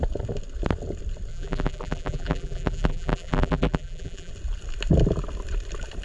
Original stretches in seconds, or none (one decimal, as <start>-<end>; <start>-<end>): 0.0-1.3; 4.3-6.0